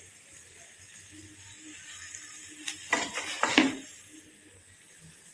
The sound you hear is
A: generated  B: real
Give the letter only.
B